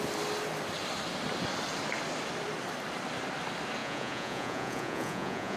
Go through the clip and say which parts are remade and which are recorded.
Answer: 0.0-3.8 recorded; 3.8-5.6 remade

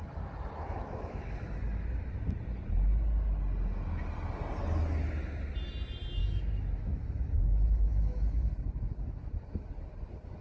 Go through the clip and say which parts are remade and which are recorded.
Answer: 0.0-0.6 recorded; 0.6-2.2 remade; 2.2-6.2 recorded; 6.2-9.7 remade; 9.7-10.4 recorded